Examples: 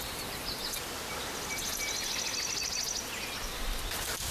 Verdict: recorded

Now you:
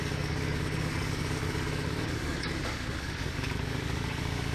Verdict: remade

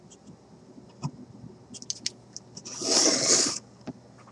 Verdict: recorded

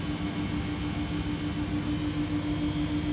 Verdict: recorded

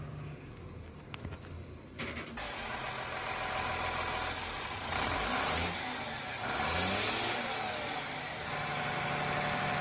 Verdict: recorded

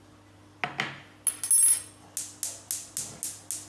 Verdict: recorded